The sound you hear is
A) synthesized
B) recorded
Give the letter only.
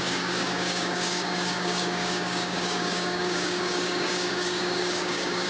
A